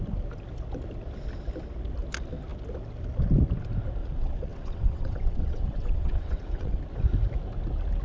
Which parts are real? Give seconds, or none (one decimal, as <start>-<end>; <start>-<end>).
0.0-4.0; 6.8-8.0